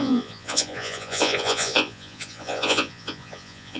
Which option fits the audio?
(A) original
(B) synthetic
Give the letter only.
B